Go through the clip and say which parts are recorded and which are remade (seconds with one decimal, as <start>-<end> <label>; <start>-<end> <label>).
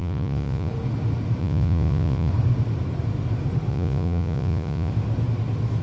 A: 0.0-0.7 remade; 0.7-1.4 recorded; 1.4-2.3 remade; 2.3-3.7 recorded; 3.7-4.9 remade; 4.9-5.8 recorded